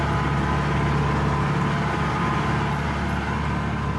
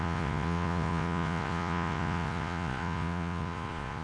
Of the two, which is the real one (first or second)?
first